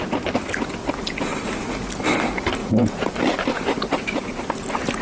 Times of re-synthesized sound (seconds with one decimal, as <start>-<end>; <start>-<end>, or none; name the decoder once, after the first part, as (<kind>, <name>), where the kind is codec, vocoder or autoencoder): 2.6-3.1 (vocoder, Vocos)